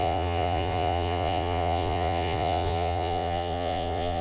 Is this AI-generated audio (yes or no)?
yes